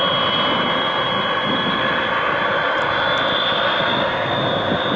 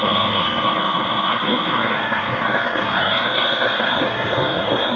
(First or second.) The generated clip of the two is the second